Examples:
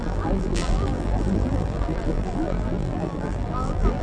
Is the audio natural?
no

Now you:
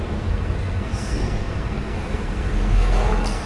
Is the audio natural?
no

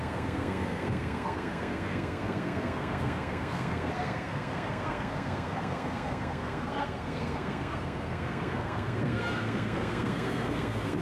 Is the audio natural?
no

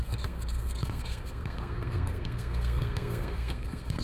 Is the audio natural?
no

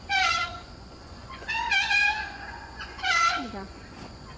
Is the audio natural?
no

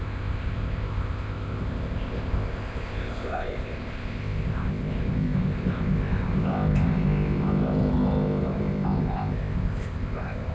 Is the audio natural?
no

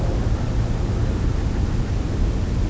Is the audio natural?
yes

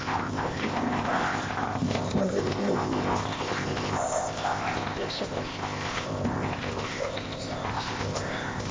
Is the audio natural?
no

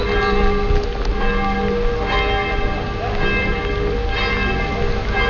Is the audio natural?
yes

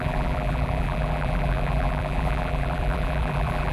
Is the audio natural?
no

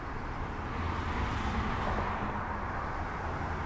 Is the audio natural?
yes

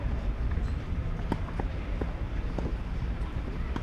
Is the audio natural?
yes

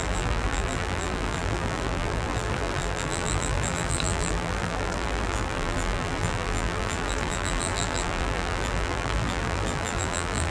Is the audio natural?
no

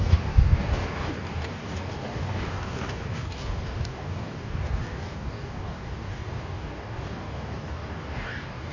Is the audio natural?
no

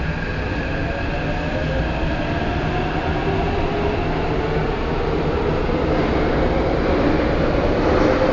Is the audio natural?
yes